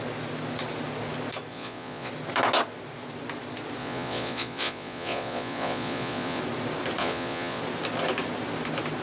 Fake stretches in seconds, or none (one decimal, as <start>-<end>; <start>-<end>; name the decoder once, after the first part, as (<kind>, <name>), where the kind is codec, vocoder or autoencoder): 1.5-2.1 (vocoder, Vocos); 3.8-6.4; 7.0-7.6